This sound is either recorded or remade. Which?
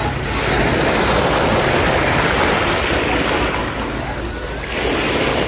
recorded